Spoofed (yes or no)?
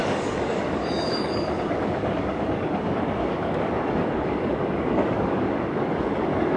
yes